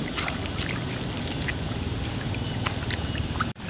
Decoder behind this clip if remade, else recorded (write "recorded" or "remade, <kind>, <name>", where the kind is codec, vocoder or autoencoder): recorded